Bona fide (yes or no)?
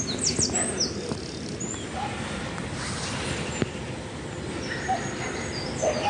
yes